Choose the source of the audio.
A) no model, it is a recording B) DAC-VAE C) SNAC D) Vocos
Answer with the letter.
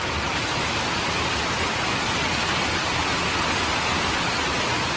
A